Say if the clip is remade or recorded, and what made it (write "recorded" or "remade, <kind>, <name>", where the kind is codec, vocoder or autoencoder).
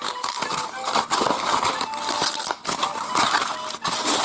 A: recorded